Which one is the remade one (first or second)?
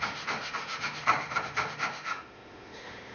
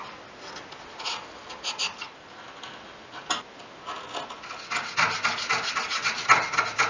first